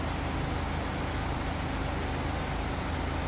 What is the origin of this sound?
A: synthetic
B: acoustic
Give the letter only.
B